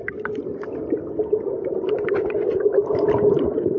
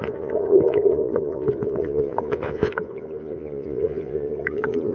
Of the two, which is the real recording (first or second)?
first